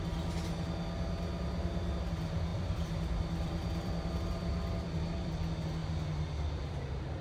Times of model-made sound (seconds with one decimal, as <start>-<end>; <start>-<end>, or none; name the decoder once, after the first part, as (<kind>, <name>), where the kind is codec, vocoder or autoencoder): 2.5-4.1 (vocoder, BigVGAN v2)